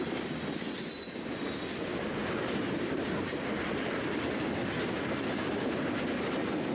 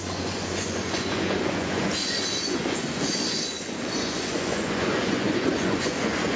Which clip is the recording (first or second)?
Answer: first